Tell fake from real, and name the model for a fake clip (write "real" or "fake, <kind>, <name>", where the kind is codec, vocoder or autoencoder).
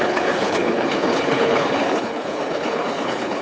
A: fake, codec, HILCodec